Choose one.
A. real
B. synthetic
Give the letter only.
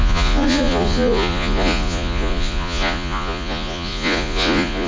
B